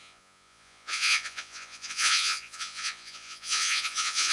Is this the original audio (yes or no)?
no